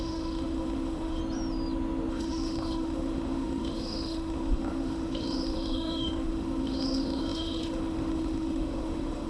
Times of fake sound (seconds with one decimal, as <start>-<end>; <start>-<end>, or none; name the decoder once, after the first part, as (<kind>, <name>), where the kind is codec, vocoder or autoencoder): 0.0-1.2 (autoencoder, DAC-VAE); 2.1-9.3